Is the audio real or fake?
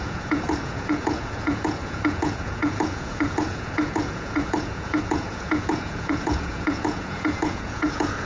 fake